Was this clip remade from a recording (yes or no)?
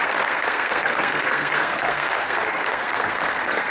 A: yes